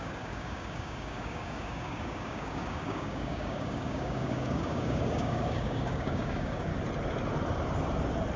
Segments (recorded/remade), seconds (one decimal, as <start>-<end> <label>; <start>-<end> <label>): 0.0-6.7 remade; 6.7-8.4 recorded